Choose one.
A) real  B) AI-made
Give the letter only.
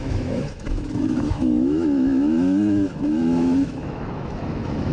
B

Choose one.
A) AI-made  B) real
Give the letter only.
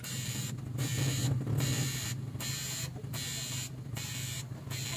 B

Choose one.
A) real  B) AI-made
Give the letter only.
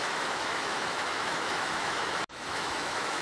B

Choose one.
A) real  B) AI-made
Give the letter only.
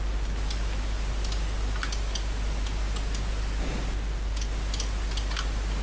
A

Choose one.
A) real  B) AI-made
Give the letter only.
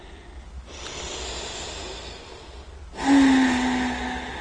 A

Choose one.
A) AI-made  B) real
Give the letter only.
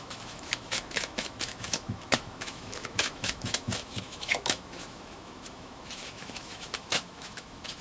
A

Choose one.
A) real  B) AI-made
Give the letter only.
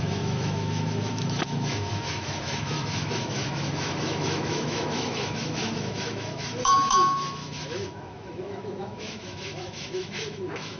B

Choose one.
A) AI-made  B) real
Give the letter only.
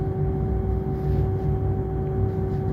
B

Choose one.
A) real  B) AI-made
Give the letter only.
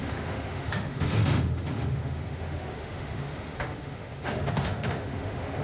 B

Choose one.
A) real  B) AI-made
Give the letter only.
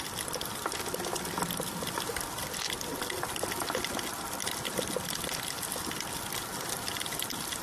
A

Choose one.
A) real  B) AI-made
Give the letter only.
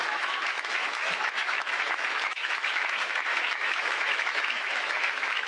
B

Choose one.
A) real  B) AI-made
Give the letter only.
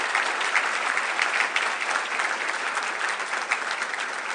A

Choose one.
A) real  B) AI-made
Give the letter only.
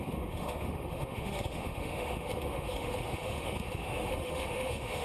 B